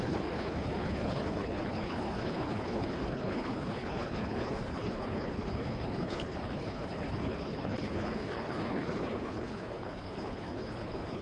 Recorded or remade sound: remade